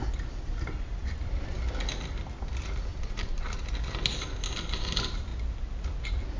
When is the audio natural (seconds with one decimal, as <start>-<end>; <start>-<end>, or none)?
0.0-1.0; 1.6-2.9; 3.6-6.4